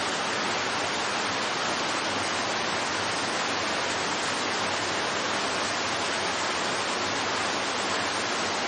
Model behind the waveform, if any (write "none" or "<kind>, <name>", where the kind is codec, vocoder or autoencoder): none